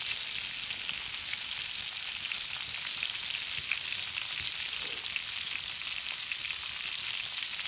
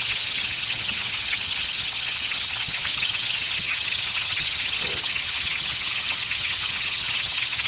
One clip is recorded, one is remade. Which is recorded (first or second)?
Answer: first